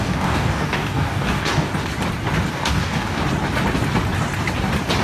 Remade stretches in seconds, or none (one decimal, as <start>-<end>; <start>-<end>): 0.0-1.7; 2.5-3.2